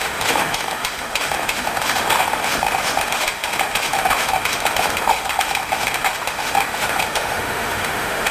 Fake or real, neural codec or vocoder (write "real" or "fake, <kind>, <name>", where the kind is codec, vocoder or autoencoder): fake, autoencoder, DAC-VAE